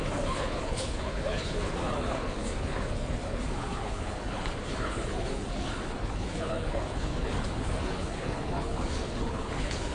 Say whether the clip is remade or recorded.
remade